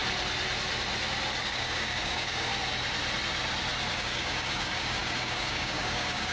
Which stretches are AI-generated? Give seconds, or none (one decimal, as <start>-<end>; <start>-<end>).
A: 1.4-2.5; 4.0-6.3